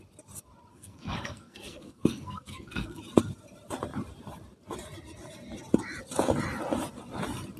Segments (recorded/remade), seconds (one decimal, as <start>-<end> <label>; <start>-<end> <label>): 0.0-0.7 recorded; 0.7-3.0 remade; 3.0-7.6 recorded